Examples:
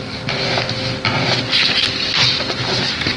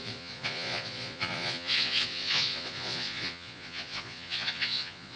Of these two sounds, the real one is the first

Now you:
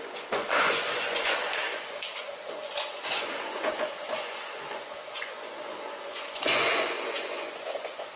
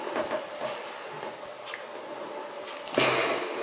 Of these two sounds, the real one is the second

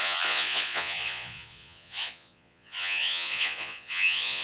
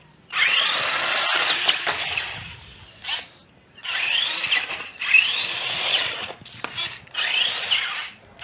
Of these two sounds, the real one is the second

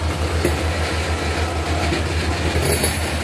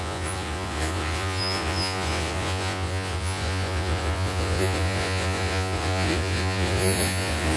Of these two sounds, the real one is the first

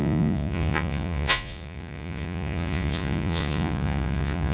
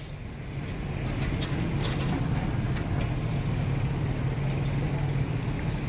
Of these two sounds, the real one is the second